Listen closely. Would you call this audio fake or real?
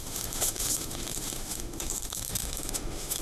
fake